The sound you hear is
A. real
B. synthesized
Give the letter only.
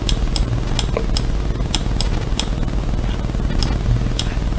A